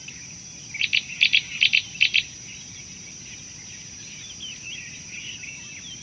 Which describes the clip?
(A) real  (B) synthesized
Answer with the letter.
A